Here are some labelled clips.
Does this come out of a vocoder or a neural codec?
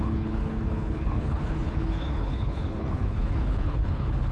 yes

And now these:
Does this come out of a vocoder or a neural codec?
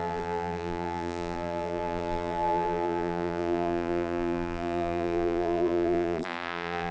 yes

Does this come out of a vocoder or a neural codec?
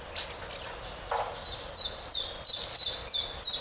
no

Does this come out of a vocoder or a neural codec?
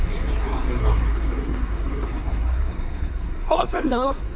yes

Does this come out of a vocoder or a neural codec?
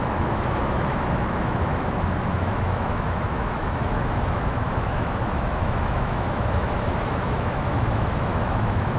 yes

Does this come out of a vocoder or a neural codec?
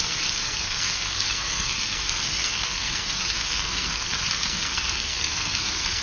yes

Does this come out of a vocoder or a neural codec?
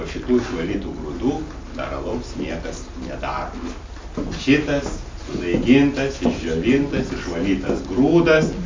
no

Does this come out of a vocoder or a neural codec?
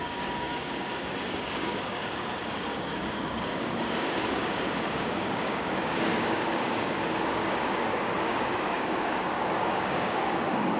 yes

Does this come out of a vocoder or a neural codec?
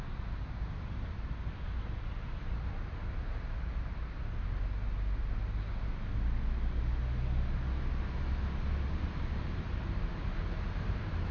no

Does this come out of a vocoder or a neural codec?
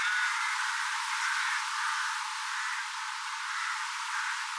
no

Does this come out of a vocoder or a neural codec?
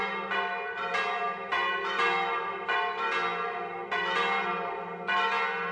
no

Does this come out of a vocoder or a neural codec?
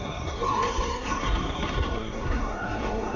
yes